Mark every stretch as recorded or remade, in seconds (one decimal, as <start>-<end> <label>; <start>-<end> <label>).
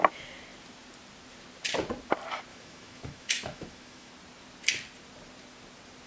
0.0-2.5 recorded; 2.5-4.1 remade; 4.1-6.1 recorded